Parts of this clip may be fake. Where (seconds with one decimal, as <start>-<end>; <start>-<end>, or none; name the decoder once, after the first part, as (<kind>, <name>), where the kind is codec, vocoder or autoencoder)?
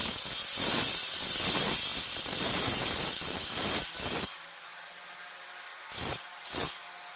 1.9-3.9 (vocoder, BigVGAN v2); 5.7-6.5